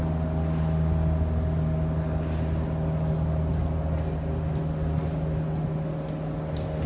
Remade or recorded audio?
recorded